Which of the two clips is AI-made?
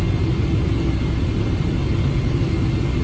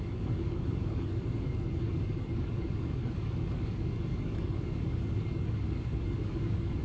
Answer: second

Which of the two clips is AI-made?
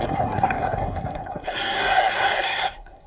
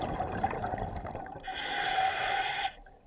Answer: first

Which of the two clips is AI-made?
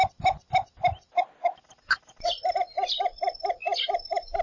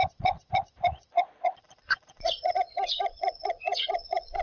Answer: second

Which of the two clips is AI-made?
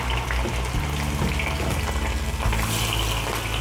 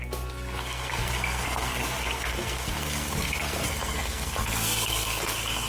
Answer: second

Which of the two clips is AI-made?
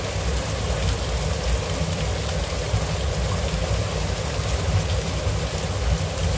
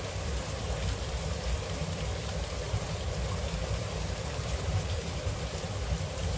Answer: second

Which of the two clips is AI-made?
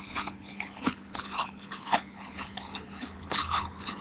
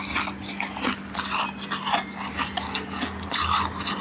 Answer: first